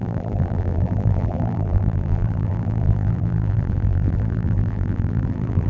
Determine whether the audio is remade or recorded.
remade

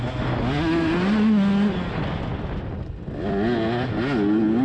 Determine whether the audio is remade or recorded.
recorded